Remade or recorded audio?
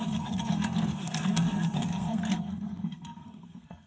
remade